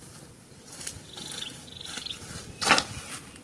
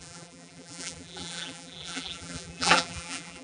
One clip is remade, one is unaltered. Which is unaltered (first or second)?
first